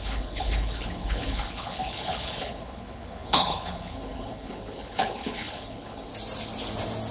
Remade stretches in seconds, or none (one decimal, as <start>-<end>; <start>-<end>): 0.0-6.1